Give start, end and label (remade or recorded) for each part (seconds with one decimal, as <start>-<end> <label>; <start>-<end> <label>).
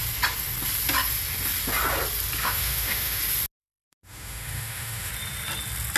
0.0-2.4 recorded; 2.4-3.2 remade; 3.2-3.6 recorded; 3.6-5.1 remade; 5.1-6.0 recorded